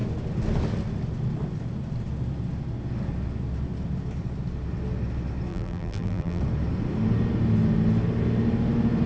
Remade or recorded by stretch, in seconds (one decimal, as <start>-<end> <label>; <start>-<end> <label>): 0.0-5.5 recorded; 5.5-6.4 remade; 6.4-9.1 recorded